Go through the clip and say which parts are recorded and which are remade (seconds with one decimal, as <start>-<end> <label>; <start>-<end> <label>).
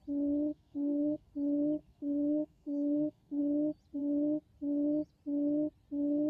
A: 0.0-0.5 recorded; 0.5-1.3 remade; 1.3-1.8 recorded; 1.8-3.4 remade; 3.4-6.3 recorded